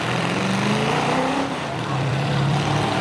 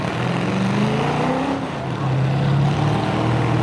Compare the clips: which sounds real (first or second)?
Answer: second